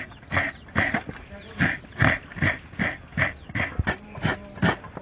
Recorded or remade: recorded